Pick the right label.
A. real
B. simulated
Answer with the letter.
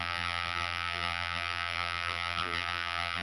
B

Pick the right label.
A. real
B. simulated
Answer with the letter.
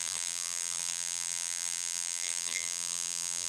B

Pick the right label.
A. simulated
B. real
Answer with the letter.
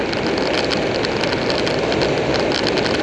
B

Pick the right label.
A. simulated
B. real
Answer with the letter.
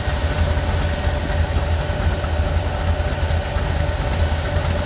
B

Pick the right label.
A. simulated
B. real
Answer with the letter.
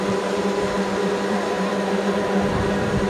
A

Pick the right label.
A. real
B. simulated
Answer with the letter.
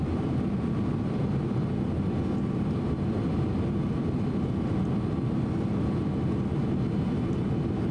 A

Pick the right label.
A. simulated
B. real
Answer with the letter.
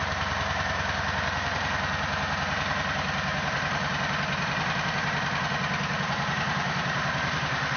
A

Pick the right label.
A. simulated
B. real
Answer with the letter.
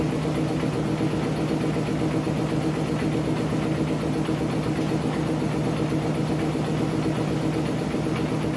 B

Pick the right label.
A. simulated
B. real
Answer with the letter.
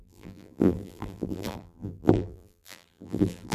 A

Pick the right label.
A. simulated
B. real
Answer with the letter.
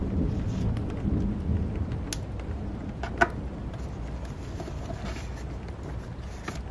B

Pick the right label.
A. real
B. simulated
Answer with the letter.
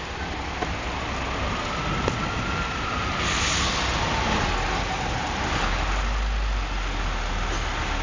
A